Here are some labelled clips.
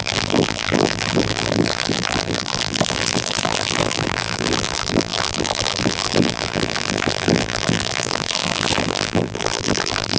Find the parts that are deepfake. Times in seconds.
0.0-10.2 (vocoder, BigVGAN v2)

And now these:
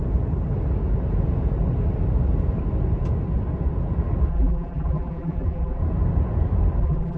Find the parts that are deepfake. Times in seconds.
4.3-5.8 (vocoder, BigVGAN v2); 6.8-7.2

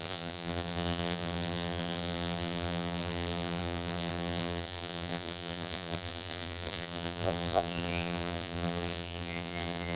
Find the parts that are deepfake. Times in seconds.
0.0-10.0 (vocoder, BigVGAN v2)

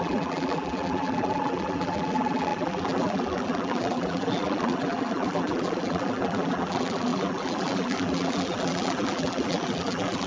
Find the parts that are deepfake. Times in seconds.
0.0-10.3 (vocoder, BigVGAN v2)

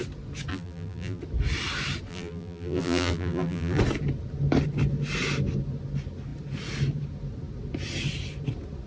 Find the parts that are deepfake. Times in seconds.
0.5-1.2 (vocoder, BigVGAN v2); 2.1-3.8

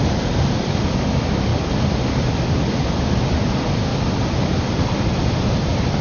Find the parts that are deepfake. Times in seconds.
0.0-1.5 (vocoder, BigVGAN v2); 2.6-6.0

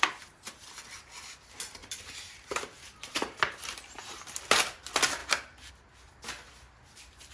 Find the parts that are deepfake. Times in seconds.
1.8-4.4 (vocoder, BigVGAN v2); 5.2-5.7

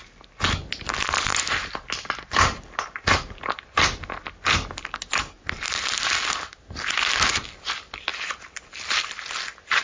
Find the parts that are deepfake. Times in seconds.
8.1-8.6 (vocoder, BigVGAN v2)